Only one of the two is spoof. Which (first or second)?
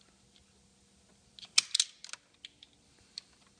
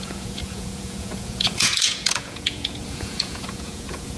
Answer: second